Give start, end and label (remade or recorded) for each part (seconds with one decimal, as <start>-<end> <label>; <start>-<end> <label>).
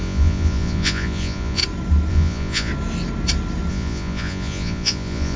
0.0-1.6 remade; 1.6-2.1 recorded; 2.1-2.7 remade; 2.7-3.7 recorded; 3.7-5.4 remade